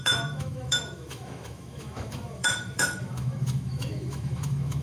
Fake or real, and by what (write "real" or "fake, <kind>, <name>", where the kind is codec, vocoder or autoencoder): fake, autoencoder, DAC-VAE